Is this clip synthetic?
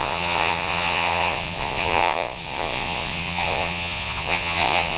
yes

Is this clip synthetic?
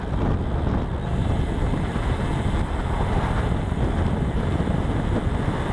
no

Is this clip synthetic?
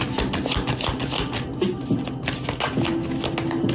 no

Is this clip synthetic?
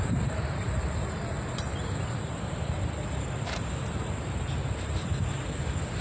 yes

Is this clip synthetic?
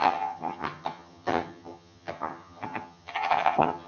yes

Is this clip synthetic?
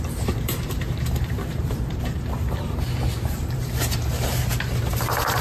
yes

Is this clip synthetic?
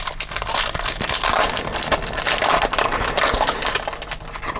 no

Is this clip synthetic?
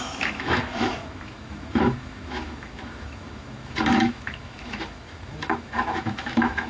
yes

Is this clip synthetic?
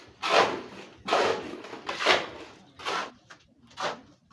no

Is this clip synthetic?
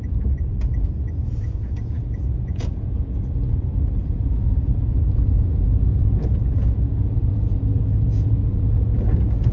yes